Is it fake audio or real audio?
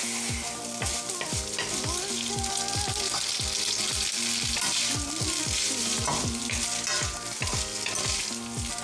real